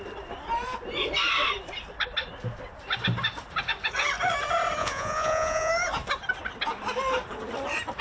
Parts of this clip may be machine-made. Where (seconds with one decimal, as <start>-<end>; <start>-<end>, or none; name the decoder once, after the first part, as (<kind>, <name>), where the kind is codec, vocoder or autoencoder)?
4.8-5.7 (vocoder, Vocos)

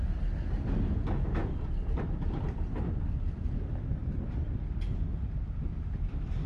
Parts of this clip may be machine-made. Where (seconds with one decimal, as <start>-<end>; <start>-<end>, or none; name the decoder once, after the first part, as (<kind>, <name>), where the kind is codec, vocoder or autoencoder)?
1.4-3.0 (vocoder, BigVGAN v2); 4.0-6.5

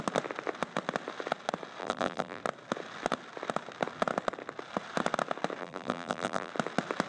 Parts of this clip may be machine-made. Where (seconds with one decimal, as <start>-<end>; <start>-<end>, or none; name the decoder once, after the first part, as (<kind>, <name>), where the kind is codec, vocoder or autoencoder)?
1.8-2.4 (vocoder, BigVGAN v2); 5.6-6.5

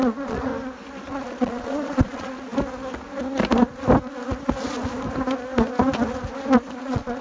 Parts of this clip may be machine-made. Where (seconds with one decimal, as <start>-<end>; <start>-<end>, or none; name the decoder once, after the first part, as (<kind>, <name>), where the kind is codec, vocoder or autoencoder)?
0.0-0.5 (vocoder, Vocos); 1.1-2.5; 6.8-7.2

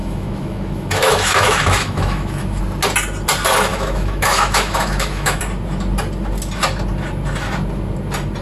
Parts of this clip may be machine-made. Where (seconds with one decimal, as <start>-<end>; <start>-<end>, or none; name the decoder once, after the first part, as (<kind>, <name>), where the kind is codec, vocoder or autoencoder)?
0.0-2.6 (autoencoder, DAC-VAE); 3.7-5.4

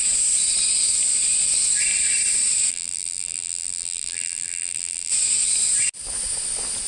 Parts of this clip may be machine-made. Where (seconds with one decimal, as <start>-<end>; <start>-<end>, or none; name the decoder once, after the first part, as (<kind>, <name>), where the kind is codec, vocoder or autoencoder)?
2.7-5.1 (vocoder, BigVGAN v2)